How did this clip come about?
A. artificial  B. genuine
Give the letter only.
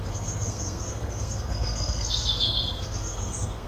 A